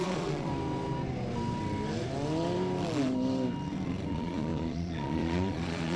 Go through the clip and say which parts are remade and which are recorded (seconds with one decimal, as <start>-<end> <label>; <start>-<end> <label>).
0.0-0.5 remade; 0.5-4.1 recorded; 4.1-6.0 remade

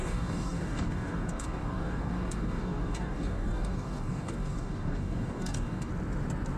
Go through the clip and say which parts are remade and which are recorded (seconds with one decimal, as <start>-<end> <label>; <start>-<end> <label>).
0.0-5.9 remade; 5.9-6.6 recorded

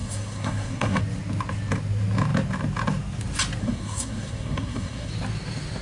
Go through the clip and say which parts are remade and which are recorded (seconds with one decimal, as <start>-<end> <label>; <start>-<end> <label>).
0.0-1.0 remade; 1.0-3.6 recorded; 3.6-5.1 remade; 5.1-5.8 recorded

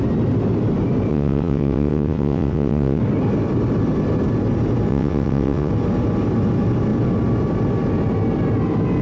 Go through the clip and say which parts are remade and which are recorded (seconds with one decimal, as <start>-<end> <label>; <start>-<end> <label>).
0.0-1.1 recorded; 1.1-3.0 remade; 3.0-4.9 recorded; 4.9-5.7 remade; 5.7-9.0 recorded

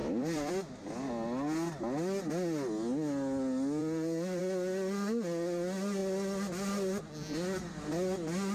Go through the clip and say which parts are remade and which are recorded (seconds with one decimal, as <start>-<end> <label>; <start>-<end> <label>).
0.0-0.5 remade; 0.5-3.8 recorded; 3.8-4.4 remade; 4.4-8.5 recorded

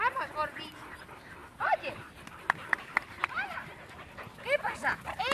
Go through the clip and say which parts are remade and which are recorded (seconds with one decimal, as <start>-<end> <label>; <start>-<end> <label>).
0.0-5.3 recorded

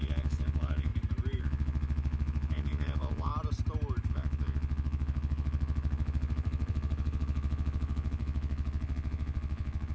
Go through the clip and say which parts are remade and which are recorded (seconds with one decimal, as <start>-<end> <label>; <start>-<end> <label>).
0.0-0.9 remade; 0.9-1.4 recorded; 1.4-3.3 remade; 3.3-4.1 recorded; 4.1-9.9 remade